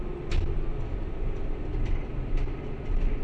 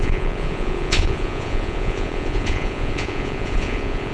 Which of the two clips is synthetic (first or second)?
second